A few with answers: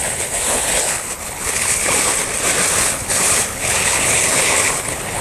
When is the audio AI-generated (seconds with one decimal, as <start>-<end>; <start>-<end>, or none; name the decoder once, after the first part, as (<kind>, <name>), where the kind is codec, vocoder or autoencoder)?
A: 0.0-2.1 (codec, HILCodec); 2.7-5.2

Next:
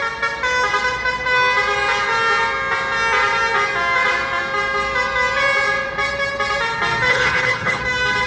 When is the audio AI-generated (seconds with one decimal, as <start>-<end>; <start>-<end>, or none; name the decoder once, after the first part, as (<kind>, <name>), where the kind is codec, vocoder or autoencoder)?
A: 7.1-7.8 (codec, HILCodec)

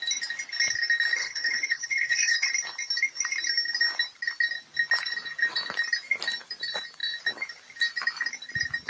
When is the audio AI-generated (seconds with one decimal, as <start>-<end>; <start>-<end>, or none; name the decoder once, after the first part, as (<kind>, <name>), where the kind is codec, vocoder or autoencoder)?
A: 1.2-2.5 (codec, HILCodec)